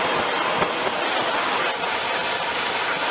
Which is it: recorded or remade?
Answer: recorded